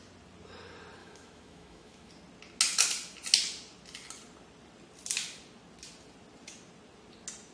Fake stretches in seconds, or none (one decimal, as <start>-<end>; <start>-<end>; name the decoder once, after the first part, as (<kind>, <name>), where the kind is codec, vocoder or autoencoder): 1.0-2.1 (autoencoder, DAC-VAE)